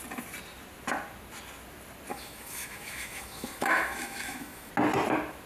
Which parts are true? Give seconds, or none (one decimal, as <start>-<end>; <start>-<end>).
0.0-2.1; 4.7-5.5